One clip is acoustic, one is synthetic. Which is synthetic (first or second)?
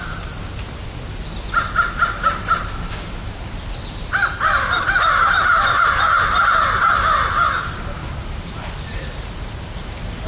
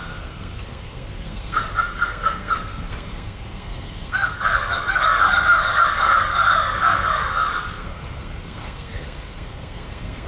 second